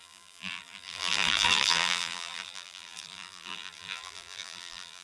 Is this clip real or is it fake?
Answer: fake